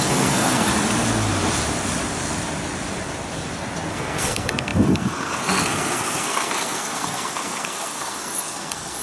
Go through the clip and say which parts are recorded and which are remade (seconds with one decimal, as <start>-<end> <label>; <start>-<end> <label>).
0.0-0.7 remade; 0.7-3.9 recorded; 3.9-9.0 remade